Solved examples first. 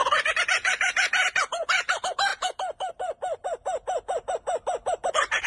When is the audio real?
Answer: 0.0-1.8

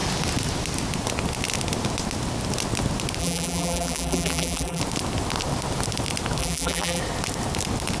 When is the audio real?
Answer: 0.0-3.2; 4.8-6.4; 7.0-8.0

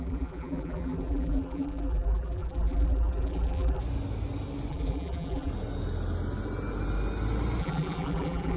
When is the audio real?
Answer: 3.8-4.7; 5.5-7.6

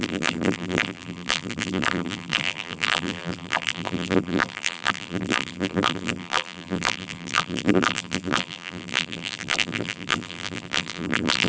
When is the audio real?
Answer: none